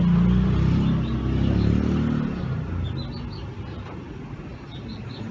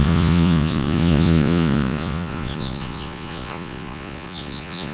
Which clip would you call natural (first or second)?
first